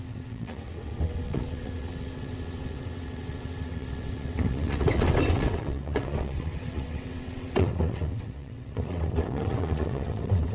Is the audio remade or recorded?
remade